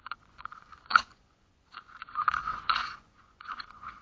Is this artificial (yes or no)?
yes